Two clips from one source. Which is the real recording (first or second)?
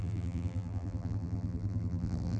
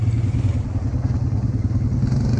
second